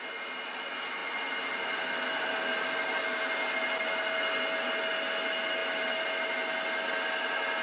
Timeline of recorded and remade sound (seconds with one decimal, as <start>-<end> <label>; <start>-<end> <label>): 0.0-7.6 recorded